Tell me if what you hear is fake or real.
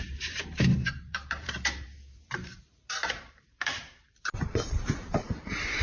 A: fake